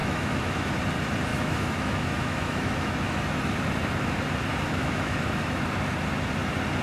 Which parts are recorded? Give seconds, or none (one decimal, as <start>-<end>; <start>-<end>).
0.7-1.3; 3.4-4.5; 5.7-6.8